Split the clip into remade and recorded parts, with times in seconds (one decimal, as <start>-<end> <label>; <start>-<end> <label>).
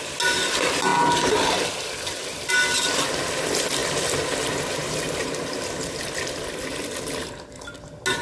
0.0-4.8 recorded; 4.8-6.0 remade; 6.0-8.2 recorded